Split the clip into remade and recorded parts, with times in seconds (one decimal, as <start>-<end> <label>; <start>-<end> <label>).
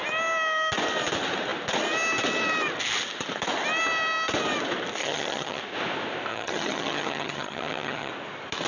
0.0-5.0 recorded; 5.0-5.6 remade; 5.6-6.3 recorded; 6.3-8.1 remade; 8.1-8.7 recorded